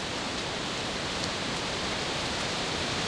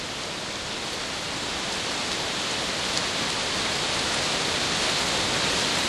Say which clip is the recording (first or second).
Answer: second